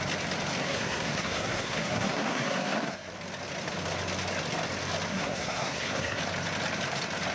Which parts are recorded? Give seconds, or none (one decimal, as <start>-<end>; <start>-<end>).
0.0-0.6; 3.1-5.1; 6.2-7.3